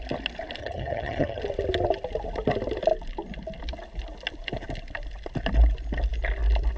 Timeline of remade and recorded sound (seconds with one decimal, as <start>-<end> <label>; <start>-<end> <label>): 0.0-0.6 recorded; 0.6-1.4 remade; 1.4-6.8 recorded